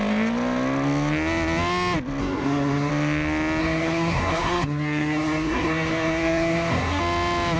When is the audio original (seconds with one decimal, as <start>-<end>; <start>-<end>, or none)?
0.0-2.2; 2.9-3.6; 7.0-7.6